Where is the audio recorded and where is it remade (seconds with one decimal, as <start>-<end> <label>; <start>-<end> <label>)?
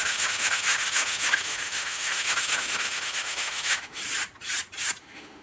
0.0-4.0 remade; 4.0-5.0 recorded; 5.0-5.4 remade